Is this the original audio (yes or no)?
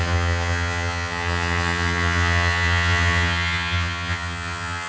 no